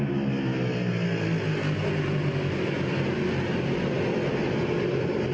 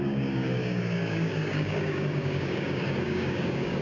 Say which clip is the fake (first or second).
second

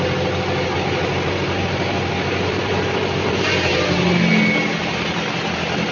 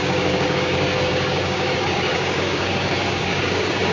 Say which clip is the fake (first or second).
second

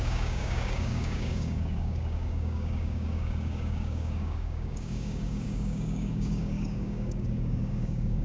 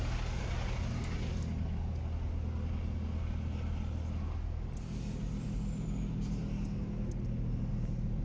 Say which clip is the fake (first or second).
first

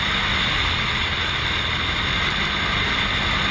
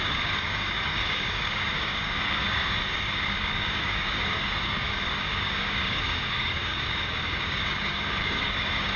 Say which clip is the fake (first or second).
second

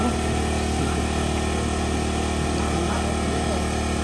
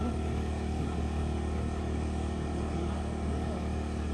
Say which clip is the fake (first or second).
second